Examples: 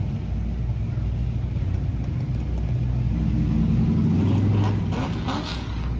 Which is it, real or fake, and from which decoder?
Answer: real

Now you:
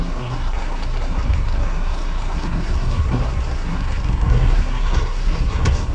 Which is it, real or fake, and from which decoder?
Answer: fake, codec, SNAC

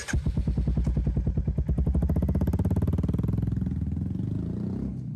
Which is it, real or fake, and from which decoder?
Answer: real